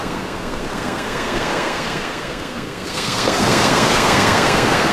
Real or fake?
fake